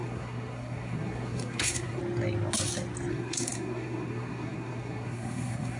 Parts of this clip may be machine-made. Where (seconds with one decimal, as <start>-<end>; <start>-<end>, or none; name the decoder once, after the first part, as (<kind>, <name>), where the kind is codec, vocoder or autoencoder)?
0.0-2.0 (codec, SNAC); 3.1-5.8